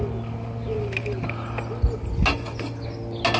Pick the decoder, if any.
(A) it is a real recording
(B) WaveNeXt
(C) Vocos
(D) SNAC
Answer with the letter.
A